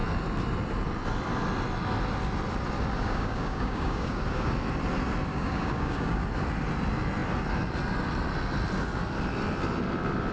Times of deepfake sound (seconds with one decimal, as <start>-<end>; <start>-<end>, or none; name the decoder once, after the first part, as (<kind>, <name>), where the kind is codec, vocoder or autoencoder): 3.0-4.5 (codec, DAC); 5.3-6.2